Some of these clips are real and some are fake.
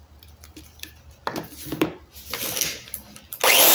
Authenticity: real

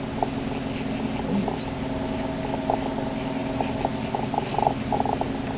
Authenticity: real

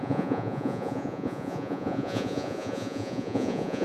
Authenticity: fake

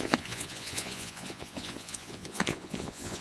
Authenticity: fake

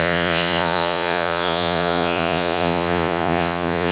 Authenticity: fake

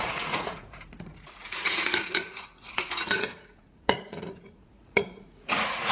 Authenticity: fake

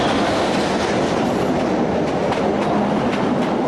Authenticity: real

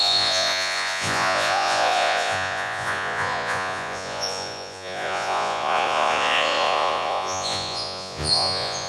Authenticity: fake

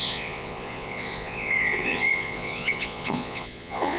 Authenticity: fake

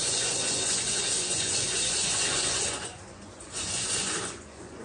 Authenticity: fake